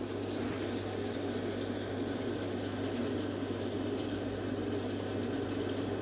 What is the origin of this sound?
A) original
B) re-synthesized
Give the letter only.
A